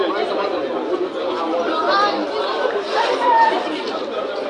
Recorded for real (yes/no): yes